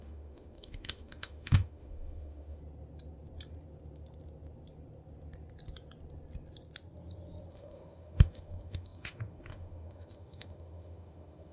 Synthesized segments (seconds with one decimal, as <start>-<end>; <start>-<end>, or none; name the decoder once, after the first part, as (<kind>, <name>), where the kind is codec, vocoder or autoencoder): 0.0-2.6 (autoencoder, DAC-VAE); 7.5-11.5